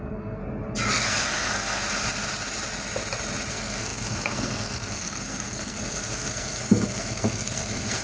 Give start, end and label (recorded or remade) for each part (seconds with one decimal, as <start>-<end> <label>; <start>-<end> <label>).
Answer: 0.0-0.4 remade; 0.4-0.9 recorded; 0.9-1.8 remade; 1.8-3.5 recorded; 3.5-8.0 remade